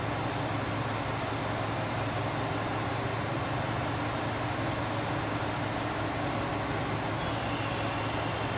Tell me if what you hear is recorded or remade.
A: recorded